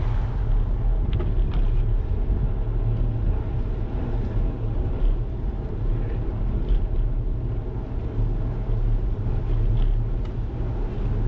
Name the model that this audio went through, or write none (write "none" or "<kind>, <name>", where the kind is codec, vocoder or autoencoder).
none